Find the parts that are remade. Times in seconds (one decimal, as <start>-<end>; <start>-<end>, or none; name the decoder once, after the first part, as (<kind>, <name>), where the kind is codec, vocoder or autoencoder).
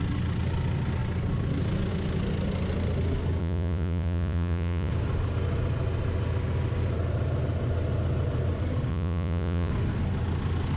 3.4-4.9 (vocoder, Vocos); 8.9-9.7